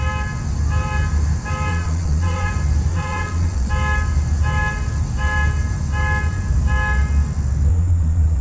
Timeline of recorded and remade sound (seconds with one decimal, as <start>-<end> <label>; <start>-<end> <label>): 0.0-1.7 recorded; 1.7-2.5 remade; 2.5-2.9 recorded; 2.9-3.7 remade; 3.7-7.7 recorded; 7.7-8.4 remade

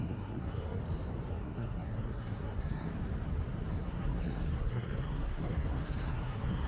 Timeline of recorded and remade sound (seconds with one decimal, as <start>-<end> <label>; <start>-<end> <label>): 0.0-0.8 remade; 0.8-1.3 recorded; 1.3-2.9 remade; 2.9-3.7 recorded; 3.7-6.7 remade

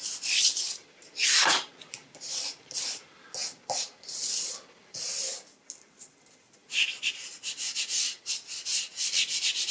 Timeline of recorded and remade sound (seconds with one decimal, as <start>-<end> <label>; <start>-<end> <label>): 0.0-9.7 recorded

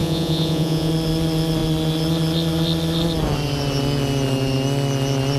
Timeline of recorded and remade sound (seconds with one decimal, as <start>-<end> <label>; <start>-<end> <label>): 0.0-0.9 remade; 0.9-5.4 recorded

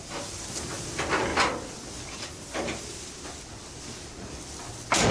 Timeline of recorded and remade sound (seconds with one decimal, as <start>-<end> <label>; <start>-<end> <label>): 0.0-5.1 recorded

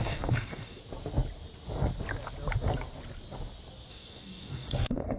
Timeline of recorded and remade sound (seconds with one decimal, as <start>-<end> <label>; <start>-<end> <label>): 0.0-0.8 remade; 0.8-3.9 recorded; 3.9-5.2 remade